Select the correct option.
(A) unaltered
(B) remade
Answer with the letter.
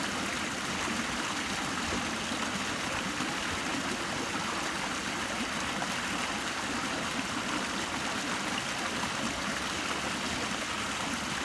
A